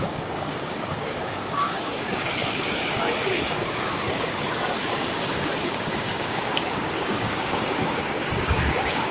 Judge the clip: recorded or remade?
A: remade